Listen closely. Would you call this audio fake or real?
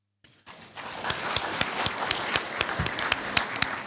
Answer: real